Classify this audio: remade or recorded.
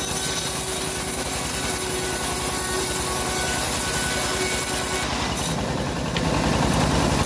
recorded